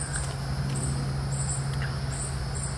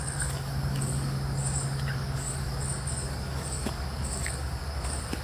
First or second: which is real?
first